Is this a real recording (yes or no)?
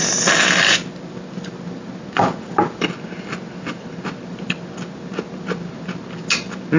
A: yes